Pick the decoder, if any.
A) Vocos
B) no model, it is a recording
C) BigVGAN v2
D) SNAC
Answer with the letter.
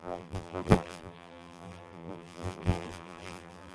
C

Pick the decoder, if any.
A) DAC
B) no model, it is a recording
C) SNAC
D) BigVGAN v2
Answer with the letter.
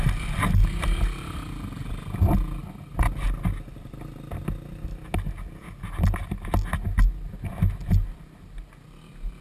B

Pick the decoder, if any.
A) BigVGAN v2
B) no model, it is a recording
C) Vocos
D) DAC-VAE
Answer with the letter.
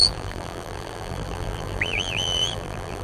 A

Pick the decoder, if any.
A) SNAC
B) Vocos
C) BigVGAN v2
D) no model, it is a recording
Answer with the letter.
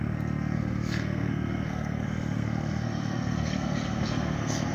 A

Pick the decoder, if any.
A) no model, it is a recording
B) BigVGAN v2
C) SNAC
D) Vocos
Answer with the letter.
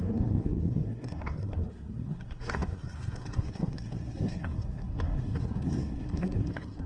C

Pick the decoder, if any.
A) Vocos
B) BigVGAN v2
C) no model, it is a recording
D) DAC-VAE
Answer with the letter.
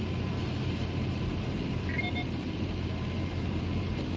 C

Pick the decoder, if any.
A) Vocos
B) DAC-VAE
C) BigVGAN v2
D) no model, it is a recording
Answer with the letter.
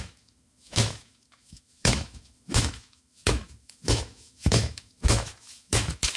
B